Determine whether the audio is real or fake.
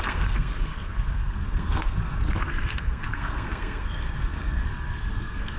fake